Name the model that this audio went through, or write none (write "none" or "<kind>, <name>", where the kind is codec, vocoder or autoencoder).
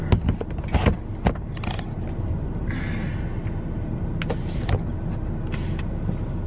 none